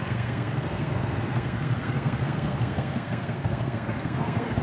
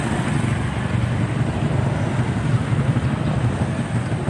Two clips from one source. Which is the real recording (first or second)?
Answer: second